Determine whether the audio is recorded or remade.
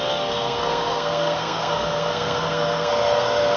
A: remade